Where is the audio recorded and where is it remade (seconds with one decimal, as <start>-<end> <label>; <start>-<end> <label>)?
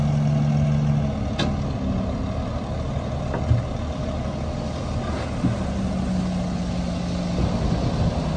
0.0-8.4 recorded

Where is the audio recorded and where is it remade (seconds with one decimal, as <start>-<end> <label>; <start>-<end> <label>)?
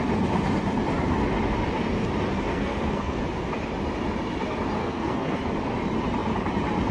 0.0-2.5 recorded; 2.5-3.2 remade; 3.2-4.8 recorded; 4.8-5.4 remade; 5.4-6.9 recorded